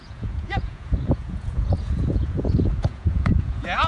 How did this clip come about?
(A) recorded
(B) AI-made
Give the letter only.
B